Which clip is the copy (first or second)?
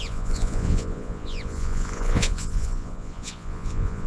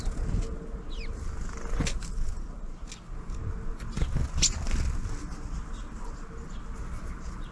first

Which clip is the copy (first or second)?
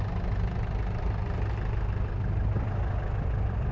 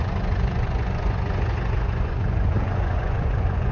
second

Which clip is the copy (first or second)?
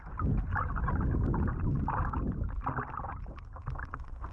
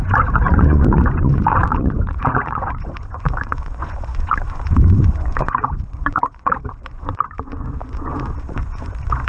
second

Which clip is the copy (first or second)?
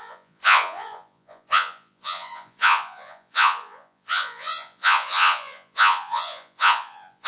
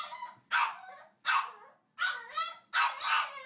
first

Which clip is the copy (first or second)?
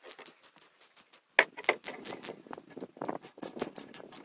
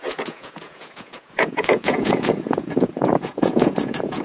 second